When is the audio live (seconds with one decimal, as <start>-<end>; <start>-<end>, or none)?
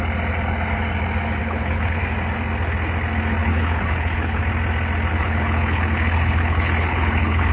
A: 0.0-1.4; 2.0-3.4; 4.4-5.1